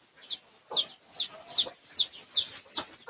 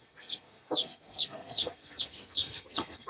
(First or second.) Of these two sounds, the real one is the first